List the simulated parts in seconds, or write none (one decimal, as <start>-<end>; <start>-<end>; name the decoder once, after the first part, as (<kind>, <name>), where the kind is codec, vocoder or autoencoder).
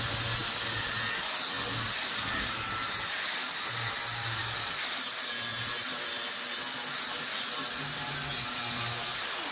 none